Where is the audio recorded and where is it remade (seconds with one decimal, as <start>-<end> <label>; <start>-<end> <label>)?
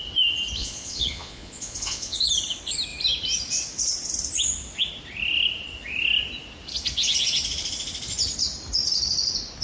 0.0-0.6 recorded; 0.6-2.3 remade; 2.3-9.6 recorded